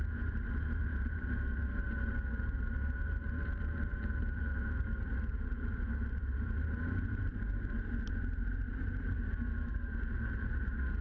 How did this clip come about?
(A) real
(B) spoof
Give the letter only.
B